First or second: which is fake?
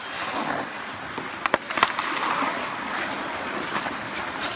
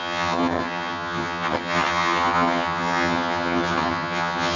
second